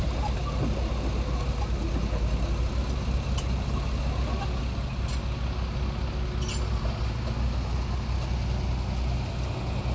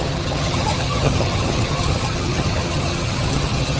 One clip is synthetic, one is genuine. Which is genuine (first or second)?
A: first